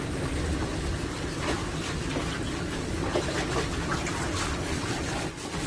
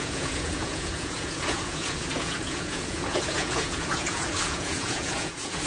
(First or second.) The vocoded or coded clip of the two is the second